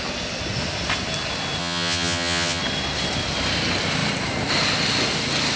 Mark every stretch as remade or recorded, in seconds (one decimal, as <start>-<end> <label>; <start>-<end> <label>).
0.0-1.6 recorded; 1.6-2.6 remade; 2.6-5.6 recorded